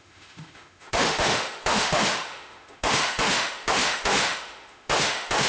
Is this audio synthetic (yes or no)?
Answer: yes